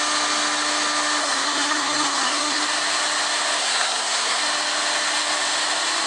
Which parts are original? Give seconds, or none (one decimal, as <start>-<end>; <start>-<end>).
0.0-1.2; 2.6-3.6; 4.4-6.1